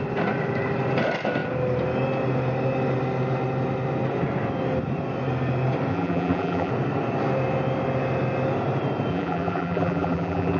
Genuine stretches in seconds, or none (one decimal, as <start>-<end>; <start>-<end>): 0.0-5.9; 6.7-9.1